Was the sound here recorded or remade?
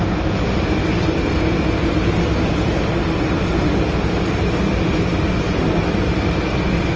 recorded